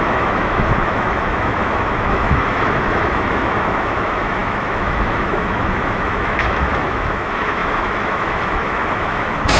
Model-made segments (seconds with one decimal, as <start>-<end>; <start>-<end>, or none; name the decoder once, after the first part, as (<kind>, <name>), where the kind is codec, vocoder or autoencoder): 0.0-9.6 (autoencoder, DAC-VAE)